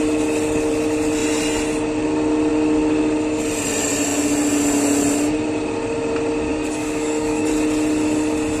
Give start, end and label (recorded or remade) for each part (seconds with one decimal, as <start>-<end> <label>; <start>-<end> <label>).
0.0-6.5 recorded; 6.5-7.5 remade; 7.5-8.6 recorded